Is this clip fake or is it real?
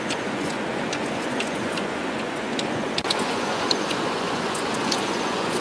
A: fake